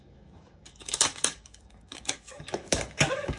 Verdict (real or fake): fake